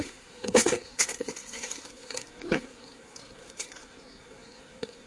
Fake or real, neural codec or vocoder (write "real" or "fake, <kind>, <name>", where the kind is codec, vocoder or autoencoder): fake, codec, SNAC